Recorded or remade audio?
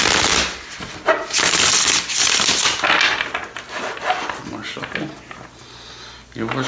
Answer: recorded